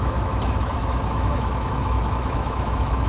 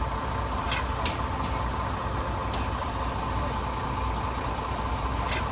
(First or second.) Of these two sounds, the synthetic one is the first